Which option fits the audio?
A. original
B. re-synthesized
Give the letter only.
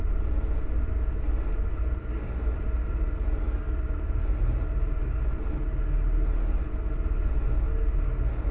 A